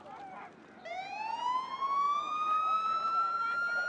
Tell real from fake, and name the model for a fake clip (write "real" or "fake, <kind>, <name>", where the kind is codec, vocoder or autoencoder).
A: real